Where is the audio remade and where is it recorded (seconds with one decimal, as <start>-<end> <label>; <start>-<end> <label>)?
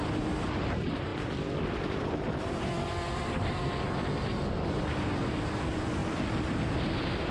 0.0-1.1 recorded; 1.1-3.8 remade; 3.8-7.3 recorded